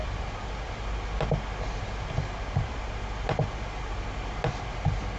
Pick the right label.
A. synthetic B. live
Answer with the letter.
B